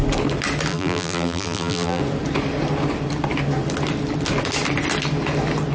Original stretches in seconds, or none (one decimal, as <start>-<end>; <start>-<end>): 0.0-0.7; 2.0-5.7